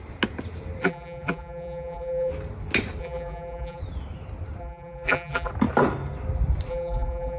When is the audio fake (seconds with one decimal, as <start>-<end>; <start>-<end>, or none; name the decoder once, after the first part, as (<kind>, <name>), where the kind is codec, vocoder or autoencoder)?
0.8-2.3 (vocoder, BigVGAN v2); 3.0-3.8; 4.6-5.5; 6.7-7.4